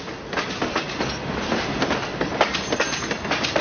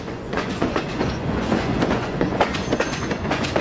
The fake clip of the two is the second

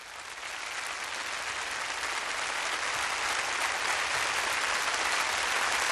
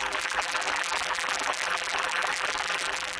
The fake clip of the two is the second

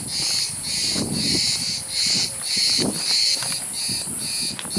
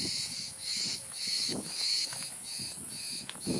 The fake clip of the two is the second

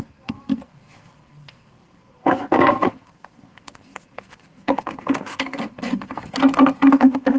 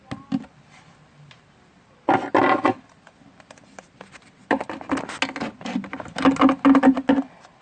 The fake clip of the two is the first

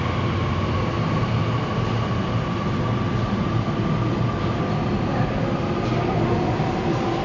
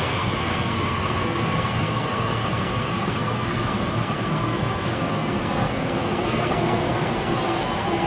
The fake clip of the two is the second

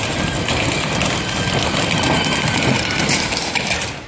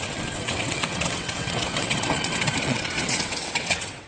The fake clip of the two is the second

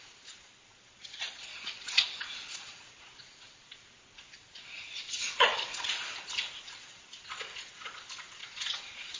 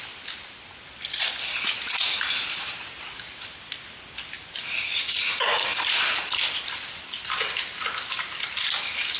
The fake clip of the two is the first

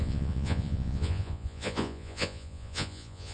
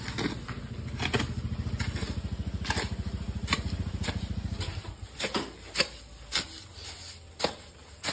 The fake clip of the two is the first